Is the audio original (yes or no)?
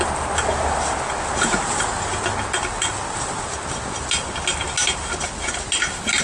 yes